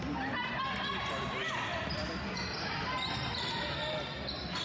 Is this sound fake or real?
real